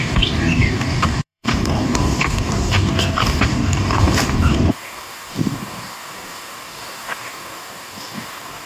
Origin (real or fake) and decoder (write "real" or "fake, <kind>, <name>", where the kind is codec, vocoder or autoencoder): fake, codec, DAC